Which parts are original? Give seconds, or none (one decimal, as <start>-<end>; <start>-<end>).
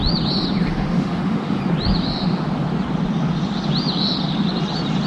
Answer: 0.0-0.7; 1.6-5.1